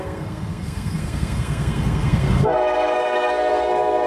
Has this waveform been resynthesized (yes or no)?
yes